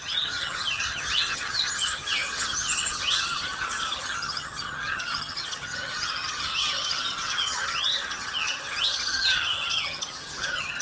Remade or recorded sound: remade